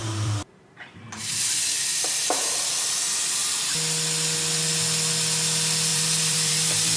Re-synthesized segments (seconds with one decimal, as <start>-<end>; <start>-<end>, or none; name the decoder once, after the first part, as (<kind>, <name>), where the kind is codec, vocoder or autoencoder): 0.0-1.3 (vocoder, BigVGAN v2); 1.9-2.4; 5.9-7.0